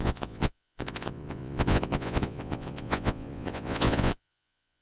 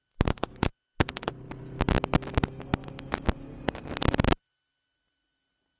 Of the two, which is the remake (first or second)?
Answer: first